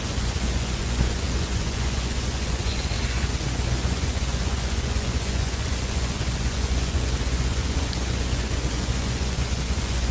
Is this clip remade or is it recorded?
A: remade